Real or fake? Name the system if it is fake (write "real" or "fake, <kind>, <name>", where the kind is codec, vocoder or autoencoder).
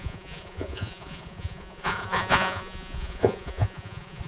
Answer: fake, vocoder, Vocos